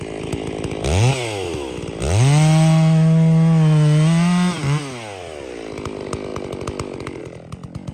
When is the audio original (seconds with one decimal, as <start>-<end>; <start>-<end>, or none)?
0.0-6.3; 7.2-7.9